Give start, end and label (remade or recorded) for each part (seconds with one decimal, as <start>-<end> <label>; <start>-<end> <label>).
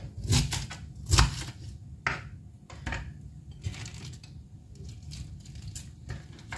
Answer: 0.0-6.6 recorded